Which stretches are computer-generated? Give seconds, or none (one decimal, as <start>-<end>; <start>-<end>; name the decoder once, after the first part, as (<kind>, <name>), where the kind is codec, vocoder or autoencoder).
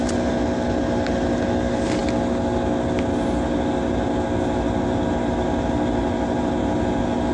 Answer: none